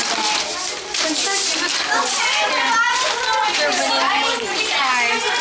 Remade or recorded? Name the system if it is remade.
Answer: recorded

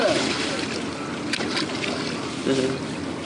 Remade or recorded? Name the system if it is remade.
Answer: recorded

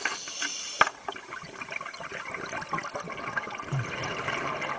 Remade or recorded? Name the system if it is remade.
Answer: recorded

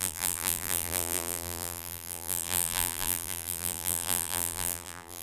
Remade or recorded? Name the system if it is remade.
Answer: remade, vocoder, BigVGAN v2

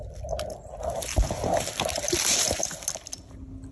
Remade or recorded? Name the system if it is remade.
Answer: recorded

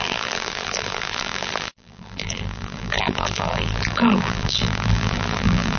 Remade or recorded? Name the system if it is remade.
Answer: remade, vocoder, BigVGAN v2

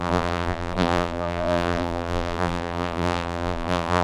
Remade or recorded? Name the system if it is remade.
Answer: remade, vocoder, BigVGAN v2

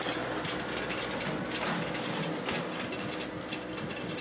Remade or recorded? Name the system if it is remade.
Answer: recorded